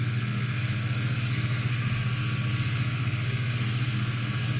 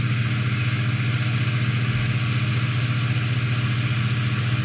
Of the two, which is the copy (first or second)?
first